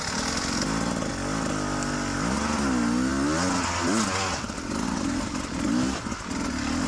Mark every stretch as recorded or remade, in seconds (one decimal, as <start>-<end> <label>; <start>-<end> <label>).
0.0-6.9 recorded

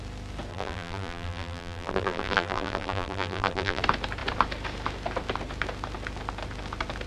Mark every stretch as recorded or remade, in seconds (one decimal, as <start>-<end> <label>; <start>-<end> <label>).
0.0-0.5 recorded; 0.5-3.8 remade; 3.8-7.1 recorded